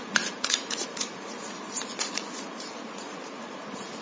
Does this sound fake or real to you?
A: fake